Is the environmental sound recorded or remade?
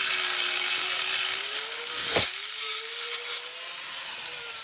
recorded